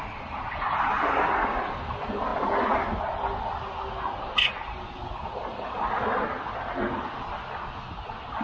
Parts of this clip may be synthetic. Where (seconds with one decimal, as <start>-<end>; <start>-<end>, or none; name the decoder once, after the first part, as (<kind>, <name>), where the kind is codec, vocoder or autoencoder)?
none

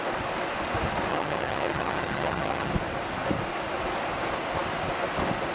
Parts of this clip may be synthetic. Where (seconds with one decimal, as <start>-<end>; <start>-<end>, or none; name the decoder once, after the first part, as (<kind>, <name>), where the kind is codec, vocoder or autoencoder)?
1.1-2.7 (vocoder, HiFi-GAN)

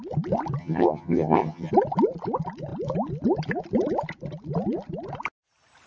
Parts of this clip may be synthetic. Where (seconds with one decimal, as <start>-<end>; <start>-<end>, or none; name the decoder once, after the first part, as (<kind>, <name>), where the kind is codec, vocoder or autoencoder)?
0.6-1.7 (vocoder, HiFi-GAN)

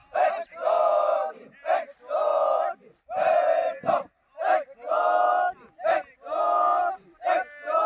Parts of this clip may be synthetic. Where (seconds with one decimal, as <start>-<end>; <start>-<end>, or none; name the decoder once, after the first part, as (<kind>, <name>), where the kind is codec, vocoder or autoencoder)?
none

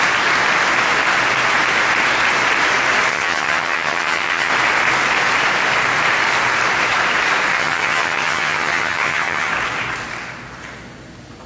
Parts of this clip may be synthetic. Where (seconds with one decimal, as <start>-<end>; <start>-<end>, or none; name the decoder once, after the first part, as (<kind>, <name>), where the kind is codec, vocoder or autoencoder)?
3.1-4.5 (vocoder, HiFi-GAN); 7.5-9.5

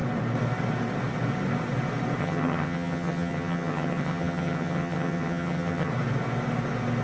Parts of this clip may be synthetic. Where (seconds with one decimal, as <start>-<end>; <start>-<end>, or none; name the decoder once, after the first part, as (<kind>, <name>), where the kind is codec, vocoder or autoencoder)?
2.2-5.9 (vocoder, HiFi-GAN)

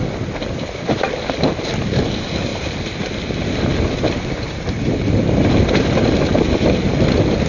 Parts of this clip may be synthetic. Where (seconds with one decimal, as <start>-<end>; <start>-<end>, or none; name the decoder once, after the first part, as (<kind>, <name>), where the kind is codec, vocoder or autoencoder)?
none